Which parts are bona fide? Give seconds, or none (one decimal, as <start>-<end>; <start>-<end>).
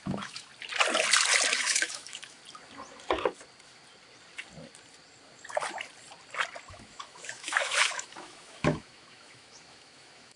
0.5-1.5; 2.4-6.7